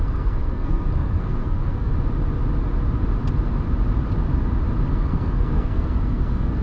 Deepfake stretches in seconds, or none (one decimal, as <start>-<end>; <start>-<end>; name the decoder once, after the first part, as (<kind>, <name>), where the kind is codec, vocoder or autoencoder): 0.0-1.9 (codec, SNAC); 4.9-6.6